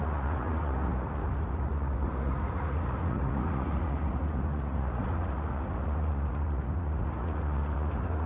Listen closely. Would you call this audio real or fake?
fake